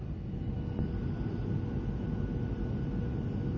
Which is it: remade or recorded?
recorded